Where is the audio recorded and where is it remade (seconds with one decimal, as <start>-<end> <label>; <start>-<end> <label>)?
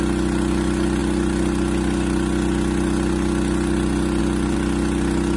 0.0-5.4 recorded